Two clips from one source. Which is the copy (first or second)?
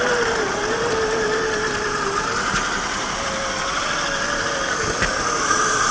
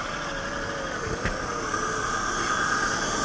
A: first